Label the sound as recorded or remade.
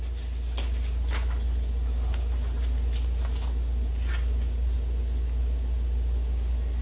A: recorded